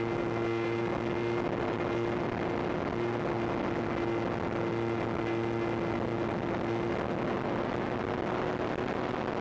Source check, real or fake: real